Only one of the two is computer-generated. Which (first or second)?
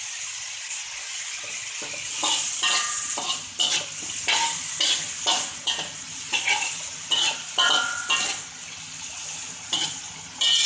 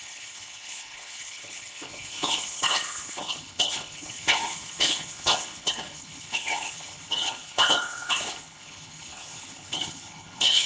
second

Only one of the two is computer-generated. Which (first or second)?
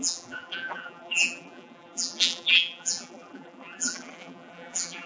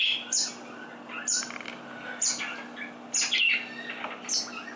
first